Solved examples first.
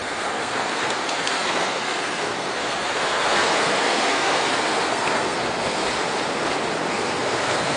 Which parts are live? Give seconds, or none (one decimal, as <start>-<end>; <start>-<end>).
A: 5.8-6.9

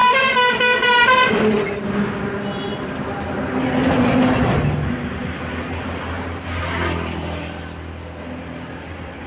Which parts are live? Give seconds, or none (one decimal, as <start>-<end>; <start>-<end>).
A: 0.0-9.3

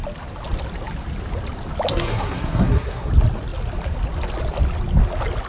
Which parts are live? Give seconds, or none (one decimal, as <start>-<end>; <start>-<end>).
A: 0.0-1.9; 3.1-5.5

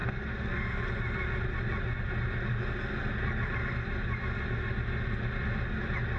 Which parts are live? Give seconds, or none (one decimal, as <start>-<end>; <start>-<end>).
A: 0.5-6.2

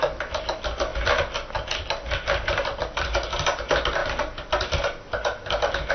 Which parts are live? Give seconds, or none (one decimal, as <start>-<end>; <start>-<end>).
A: 0.0-5.9